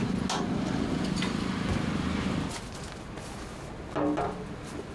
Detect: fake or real real